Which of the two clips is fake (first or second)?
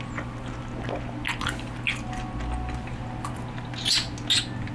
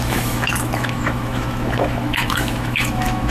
second